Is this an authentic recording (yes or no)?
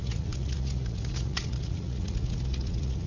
no